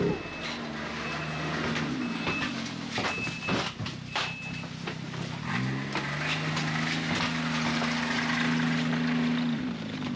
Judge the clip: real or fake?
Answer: real